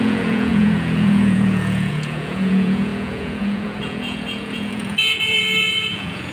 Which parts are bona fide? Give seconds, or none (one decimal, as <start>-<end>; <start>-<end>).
none

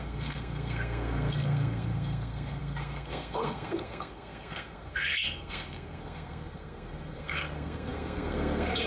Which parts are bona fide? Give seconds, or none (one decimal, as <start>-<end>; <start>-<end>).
none